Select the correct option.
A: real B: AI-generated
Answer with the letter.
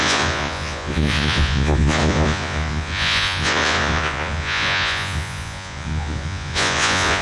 B